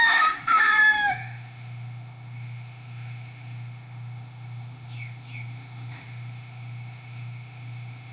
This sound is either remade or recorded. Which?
remade